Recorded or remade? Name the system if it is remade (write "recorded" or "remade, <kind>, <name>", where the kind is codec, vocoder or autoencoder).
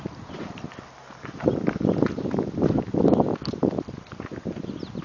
remade, vocoder, BigVGAN v2